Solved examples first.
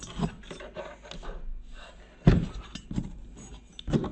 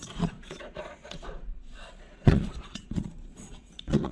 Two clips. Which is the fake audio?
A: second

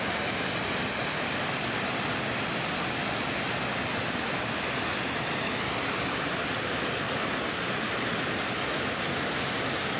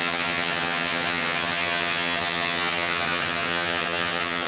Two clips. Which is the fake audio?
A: second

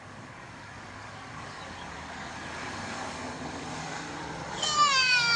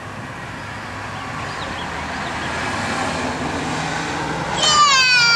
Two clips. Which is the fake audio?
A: first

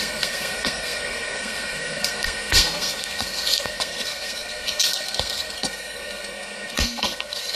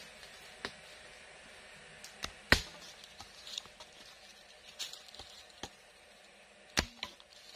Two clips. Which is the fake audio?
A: first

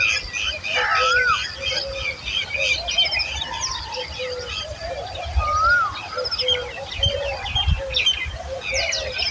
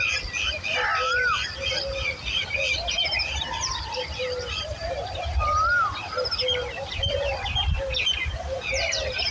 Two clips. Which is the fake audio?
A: second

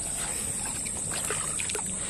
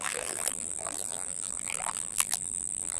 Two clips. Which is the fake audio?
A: second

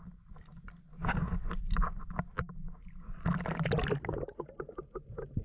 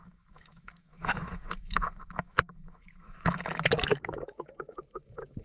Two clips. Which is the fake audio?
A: second